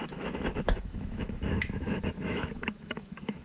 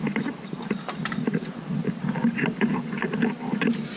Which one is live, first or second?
second